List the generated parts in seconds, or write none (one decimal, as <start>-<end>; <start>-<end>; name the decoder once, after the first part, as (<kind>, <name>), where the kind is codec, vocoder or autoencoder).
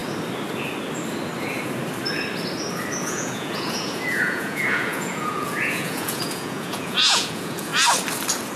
3.0-7.7 (vocoder, Vocos)